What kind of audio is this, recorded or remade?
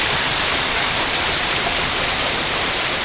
remade